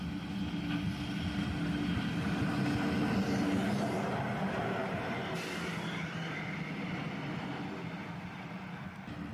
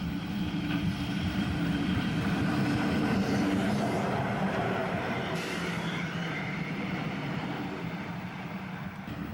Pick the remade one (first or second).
second